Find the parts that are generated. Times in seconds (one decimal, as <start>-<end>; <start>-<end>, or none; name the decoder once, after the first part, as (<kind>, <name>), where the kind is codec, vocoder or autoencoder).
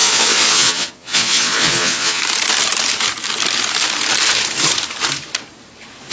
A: 0.0-2.2 (vocoder, Vocos)